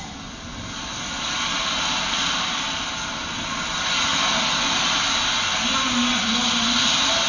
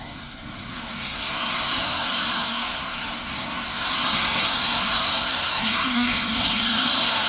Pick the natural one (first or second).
first